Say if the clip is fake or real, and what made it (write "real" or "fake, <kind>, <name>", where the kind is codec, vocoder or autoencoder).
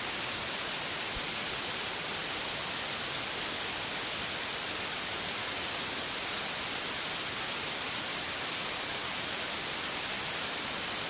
real